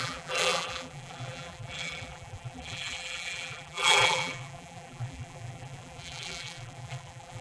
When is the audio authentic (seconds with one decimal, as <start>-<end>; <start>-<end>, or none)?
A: none